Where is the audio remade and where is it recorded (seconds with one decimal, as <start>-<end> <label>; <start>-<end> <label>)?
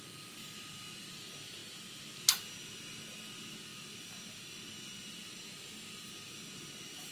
0.0-7.1 recorded